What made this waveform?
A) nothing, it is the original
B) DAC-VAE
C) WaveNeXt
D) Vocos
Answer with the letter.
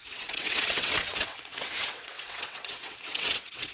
C